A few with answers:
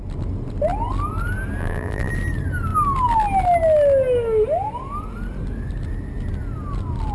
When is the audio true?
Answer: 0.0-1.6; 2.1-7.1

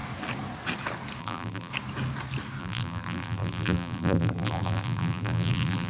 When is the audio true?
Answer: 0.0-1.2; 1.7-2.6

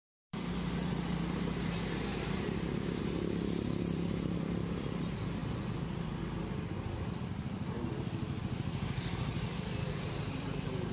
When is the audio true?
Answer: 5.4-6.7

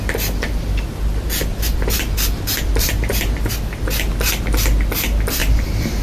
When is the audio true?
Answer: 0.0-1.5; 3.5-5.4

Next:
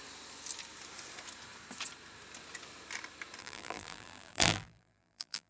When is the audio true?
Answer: 0.0-3.4